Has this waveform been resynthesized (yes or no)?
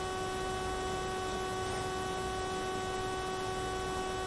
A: no